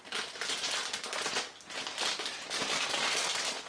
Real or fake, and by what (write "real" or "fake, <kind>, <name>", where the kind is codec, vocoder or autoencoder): real